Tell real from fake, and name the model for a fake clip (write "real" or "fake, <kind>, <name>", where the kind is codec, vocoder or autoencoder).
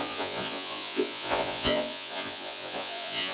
fake, vocoder, Vocos